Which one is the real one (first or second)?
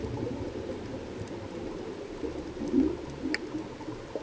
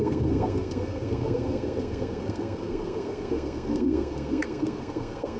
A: first